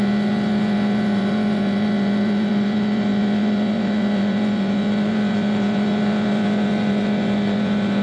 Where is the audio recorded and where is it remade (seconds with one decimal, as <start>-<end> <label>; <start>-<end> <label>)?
0.0-8.0 remade